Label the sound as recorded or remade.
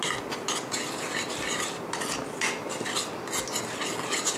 recorded